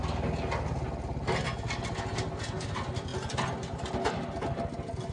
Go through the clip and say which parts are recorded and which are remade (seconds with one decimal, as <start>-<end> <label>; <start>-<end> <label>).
0.0-5.1 recorded